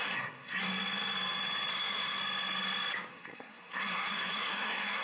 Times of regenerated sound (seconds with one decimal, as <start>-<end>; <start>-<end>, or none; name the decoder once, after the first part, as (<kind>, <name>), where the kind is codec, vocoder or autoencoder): 0.0-0.6 (codec, SNAC); 1.7-2.2; 3.1-5.0